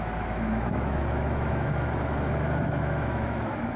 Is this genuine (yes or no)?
no